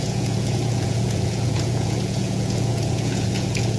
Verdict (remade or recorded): remade